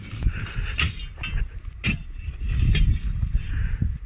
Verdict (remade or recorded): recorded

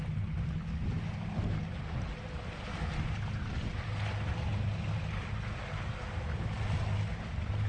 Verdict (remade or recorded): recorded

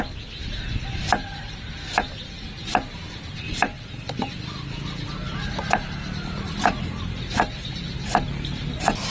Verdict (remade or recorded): recorded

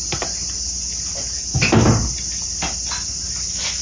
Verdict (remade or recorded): recorded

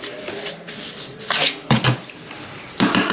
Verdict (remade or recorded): recorded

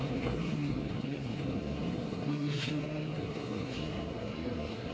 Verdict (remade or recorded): remade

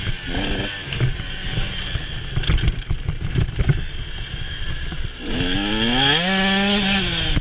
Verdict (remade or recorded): recorded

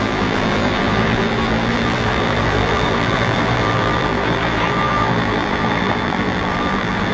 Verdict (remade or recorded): remade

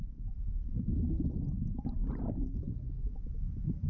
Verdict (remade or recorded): recorded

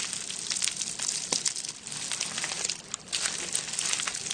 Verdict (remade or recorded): recorded